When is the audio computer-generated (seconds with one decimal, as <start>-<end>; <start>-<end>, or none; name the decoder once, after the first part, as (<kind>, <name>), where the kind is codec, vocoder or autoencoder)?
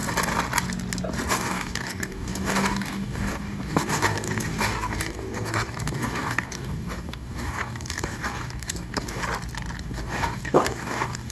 1.3-9.2 (codec, DAC); 9.8-11.3